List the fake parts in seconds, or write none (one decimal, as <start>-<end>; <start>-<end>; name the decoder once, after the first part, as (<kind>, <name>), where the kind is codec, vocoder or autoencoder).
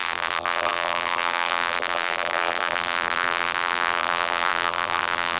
0.0-5.4 (vocoder, BigVGAN v2)